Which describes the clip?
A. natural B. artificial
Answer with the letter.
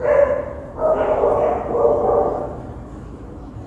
A